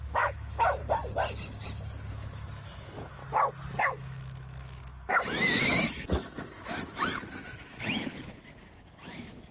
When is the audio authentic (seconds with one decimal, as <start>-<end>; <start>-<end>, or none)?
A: 0.8-2.1; 3.2-3.8